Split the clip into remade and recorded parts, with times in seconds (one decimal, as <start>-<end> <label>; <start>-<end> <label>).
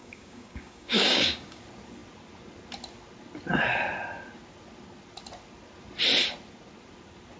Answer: 0.0-1.6 remade; 1.6-7.4 recorded